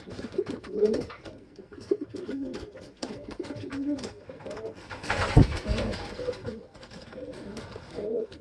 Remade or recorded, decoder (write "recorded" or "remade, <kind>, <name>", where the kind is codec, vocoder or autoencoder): remade, codec, SNAC